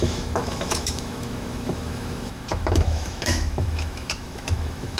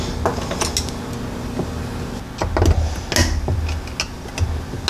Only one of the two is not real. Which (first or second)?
first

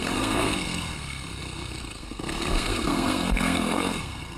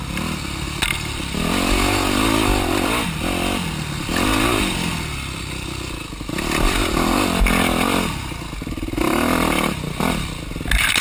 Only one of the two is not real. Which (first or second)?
first